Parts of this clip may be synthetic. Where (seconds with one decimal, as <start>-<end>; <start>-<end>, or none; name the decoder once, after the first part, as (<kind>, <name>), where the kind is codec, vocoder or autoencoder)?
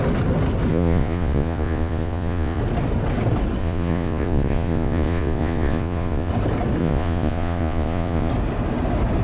0.7-2.6 (vocoder, Vocos); 3.6-6.3; 6.8-8.3